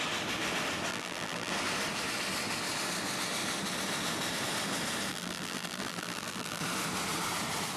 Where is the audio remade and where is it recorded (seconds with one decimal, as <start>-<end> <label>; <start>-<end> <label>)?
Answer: 0.0-0.9 recorded; 0.9-1.5 remade; 1.5-5.1 recorded; 5.1-6.6 remade; 6.6-7.8 recorded